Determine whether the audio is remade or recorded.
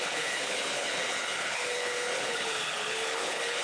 remade